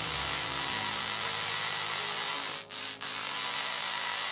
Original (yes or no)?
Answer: no